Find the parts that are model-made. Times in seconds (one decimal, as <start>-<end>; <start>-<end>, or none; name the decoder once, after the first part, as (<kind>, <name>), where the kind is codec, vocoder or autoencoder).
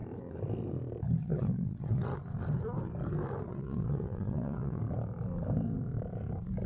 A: 1.2-2.0 (vocoder, WaveNeXt); 3.5-4.8